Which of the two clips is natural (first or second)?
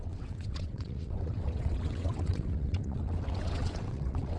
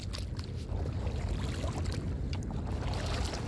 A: second